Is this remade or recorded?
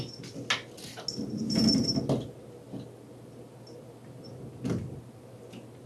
recorded